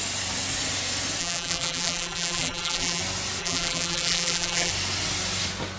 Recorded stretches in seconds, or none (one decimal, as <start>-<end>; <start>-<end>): 0.0-1.2; 3.0-3.4; 4.7-5.8

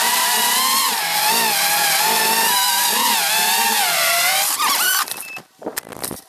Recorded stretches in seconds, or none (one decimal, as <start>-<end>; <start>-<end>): none

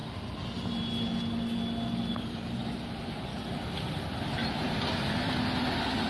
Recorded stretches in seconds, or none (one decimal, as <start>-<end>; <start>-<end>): 0.0-2.2; 3.3-6.1

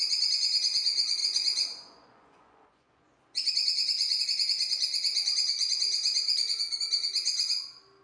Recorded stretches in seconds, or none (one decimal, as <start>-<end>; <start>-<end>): 0.0-1.2; 4.2-8.0

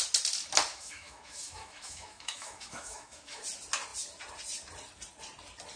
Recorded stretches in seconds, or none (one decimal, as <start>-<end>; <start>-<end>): 0.0-0.7; 3.4-5.8